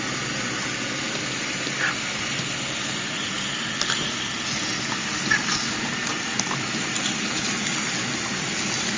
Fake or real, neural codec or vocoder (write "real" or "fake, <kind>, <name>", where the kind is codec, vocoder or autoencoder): real